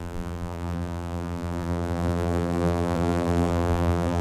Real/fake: fake